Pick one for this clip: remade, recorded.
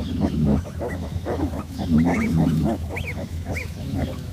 remade